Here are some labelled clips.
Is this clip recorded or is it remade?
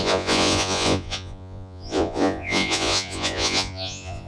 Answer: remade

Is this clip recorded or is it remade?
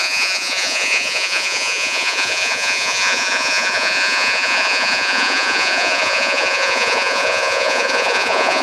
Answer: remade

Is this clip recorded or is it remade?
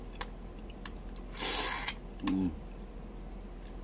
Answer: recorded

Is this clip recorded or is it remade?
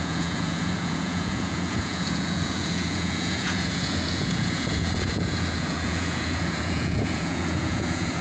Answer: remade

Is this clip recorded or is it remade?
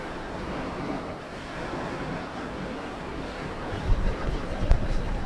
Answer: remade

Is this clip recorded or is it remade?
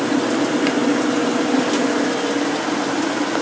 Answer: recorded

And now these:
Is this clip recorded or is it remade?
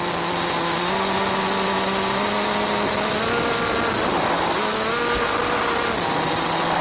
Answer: recorded